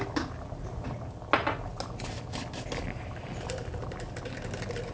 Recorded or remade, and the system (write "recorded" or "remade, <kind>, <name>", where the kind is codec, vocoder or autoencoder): recorded